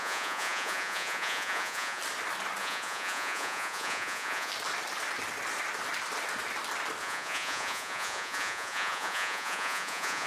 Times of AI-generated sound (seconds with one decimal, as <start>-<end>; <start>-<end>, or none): 0.0-2.0; 2.6-4.5; 7.0-10.3

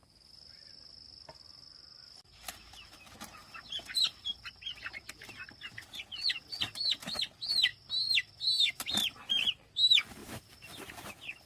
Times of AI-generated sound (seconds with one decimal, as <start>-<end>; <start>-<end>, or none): none

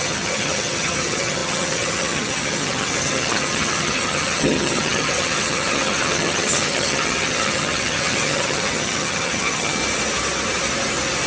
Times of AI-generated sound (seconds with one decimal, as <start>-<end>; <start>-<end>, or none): 0.0-9.8

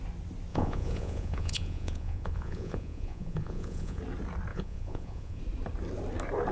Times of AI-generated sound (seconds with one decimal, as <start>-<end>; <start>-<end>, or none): 0.5-4.0; 4.5-5.4

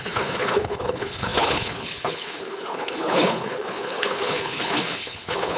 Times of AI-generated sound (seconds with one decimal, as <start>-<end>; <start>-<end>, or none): 0.0-5.6

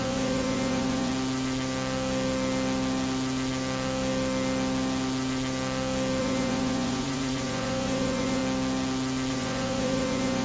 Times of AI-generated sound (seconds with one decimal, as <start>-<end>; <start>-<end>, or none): 0.0-1.1; 6.2-8.4; 9.3-10.4